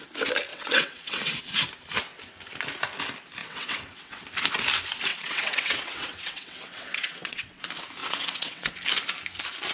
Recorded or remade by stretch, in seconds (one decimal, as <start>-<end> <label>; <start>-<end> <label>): 0.0-0.5 recorded; 0.5-1.4 remade; 1.4-3.4 recorded; 3.4-4.2 remade; 4.2-5.1 recorded; 5.1-7.6 remade; 7.6-8.0 recorded; 8.0-8.7 remade; 8.7-9.7 recorded

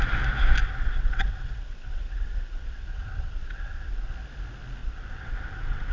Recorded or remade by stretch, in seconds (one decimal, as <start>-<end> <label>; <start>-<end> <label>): 0.0-0.6 recorded; 0.6-4.1 remade; 4.1-4.8 recorded; 4.8-5.9 remade

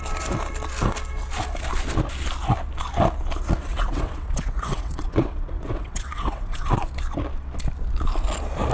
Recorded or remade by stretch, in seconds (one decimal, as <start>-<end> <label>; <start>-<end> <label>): 0.0-3.6 recorded; 3.6-6.8 remade; 6.8-8.7 recorded

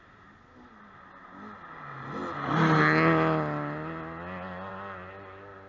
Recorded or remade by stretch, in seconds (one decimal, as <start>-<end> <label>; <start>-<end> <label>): 0.0-5.7 recorded

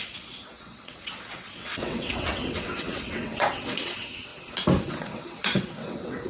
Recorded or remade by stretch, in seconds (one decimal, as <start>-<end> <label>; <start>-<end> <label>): 0.0-4.3 remade; 4.3-4.9 recorded; 4.9-6.3 remade

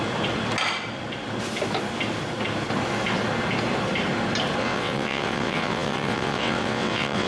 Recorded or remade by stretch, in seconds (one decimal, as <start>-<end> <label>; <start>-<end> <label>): 0.0-4.6 recorded; 4.6-7.3 remade